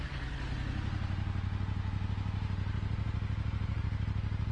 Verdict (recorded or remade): recorded